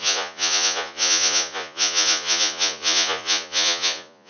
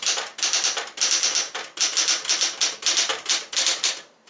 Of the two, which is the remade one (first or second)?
first